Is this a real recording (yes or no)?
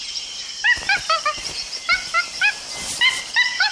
yes